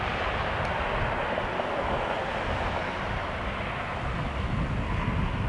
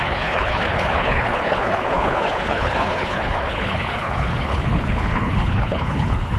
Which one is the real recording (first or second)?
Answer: first